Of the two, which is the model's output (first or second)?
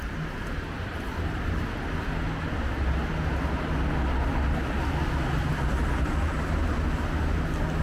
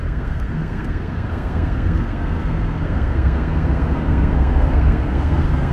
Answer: second